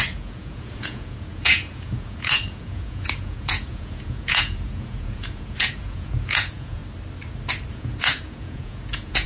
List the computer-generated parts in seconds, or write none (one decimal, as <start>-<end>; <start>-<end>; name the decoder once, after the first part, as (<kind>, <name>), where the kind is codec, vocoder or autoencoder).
0.0-6.8 (vocoder, Vocos); 7.7-9.3

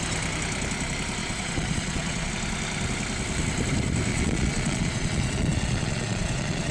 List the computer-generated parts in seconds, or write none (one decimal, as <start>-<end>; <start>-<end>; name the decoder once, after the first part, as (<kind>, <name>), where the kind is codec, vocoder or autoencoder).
1.2-2.3 (vocoder, Vocos); 4.1-6.7